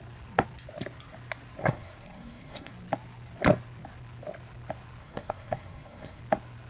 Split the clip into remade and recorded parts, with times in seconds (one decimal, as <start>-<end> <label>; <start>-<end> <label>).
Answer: 0.0-1.6 recorded; 1.6-2.7 remade; 2.7-5.0 recorded; 5.0-6.2 remade; 6.2-6.7 recorded